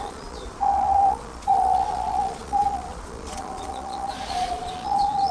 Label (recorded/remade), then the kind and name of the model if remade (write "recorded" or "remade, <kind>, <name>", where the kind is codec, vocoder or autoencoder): remade, vocoder, Vocos